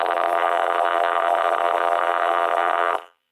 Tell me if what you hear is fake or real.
fake